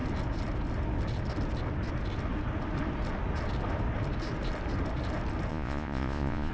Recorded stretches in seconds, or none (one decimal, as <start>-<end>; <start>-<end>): 0.0-5.5